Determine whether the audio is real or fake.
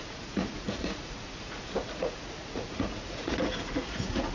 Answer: fake